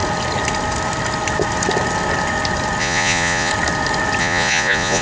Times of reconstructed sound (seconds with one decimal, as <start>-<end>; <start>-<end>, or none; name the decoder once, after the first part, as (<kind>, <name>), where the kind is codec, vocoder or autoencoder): 2.8-3.5 (vocoder, Vocos); 4.2-5.0